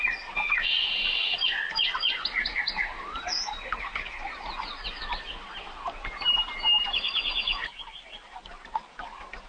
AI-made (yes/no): no